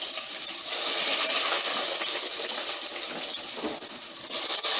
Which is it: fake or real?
real